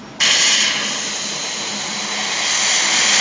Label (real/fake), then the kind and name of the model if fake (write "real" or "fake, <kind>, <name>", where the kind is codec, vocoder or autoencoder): real